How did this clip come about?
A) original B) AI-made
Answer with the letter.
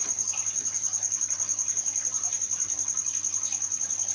A